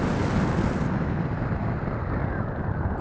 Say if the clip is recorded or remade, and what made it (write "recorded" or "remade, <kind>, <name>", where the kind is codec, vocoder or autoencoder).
recorded